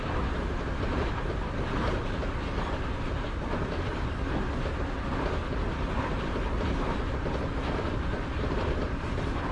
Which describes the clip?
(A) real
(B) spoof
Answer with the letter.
B